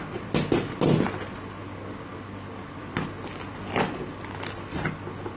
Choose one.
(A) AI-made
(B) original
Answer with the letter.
B